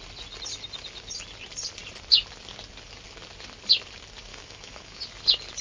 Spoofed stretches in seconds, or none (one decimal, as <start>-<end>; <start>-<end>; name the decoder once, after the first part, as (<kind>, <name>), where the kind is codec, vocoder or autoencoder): 4.3-5.0 (autoencoder, DAC-VAE)